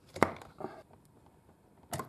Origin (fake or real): real